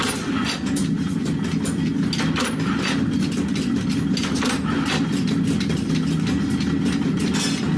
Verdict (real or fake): real